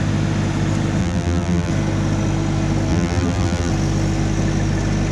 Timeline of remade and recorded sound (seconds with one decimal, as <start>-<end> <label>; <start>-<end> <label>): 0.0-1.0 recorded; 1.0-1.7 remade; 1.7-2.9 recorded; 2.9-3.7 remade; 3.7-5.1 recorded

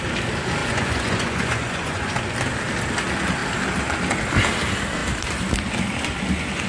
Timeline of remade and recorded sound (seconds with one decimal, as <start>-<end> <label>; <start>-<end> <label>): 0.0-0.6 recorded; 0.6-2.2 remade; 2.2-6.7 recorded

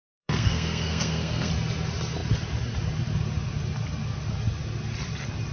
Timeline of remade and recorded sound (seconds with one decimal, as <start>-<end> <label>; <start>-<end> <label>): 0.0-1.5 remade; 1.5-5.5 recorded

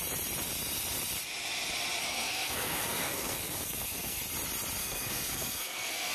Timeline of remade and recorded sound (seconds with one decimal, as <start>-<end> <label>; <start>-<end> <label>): 0.0-2.0 recorded; 2.0-4.2 remade; 4.2-4.8 recorded; 4.8-6.1 remade

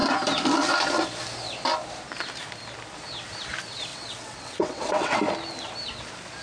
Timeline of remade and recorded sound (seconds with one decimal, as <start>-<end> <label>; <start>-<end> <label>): 0.0-3.9 recorded; 3.9-5.2 remade; 5.2-6.4 recorded

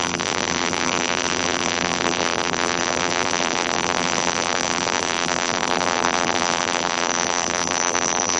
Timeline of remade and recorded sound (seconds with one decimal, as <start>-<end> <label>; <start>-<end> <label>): 0.0-8.4 remade

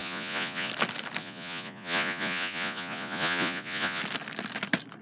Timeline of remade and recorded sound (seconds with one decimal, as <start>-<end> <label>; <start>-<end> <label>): 0.0-0.7 remade; 0.7-1.2 recorded; 1.2-4.0 remade; 4.0-5.0 recorded

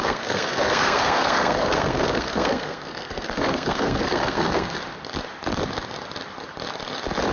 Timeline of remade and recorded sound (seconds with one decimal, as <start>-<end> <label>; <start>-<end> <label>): 0.0-4.8 remade; 4.8-7.3 recorded